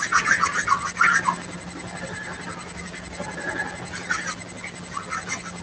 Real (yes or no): yes